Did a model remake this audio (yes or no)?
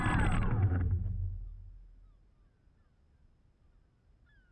no